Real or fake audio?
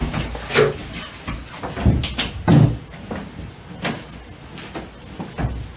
real